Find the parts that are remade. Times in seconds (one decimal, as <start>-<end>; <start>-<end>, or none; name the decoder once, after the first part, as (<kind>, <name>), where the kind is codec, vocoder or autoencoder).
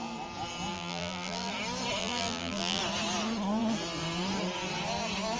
0.7-1.5 (vocoder, BigVGAN v2); 2.0-2.8